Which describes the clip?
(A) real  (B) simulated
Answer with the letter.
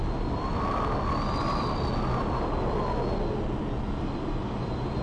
A